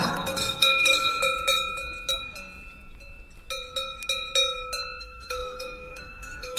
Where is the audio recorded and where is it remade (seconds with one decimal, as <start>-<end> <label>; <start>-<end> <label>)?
0.0-1.2 remade; 1.2-5.0 recorded; 5.0-6.6 remade